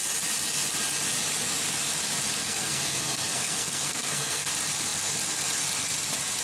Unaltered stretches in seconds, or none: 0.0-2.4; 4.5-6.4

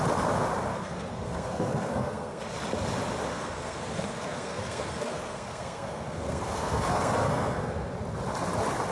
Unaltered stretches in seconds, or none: 0.0-0.7; 2.4-3.3; 7.9-8.9